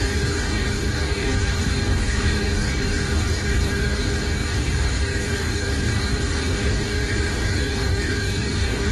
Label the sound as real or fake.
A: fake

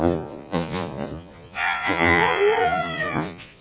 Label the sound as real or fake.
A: fake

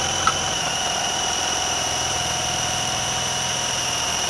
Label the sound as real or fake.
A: fake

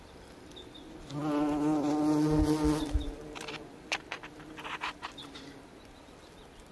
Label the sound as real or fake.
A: real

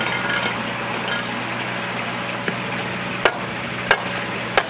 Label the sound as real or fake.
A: real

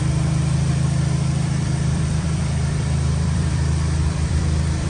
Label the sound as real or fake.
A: fake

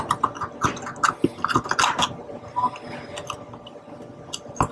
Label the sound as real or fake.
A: real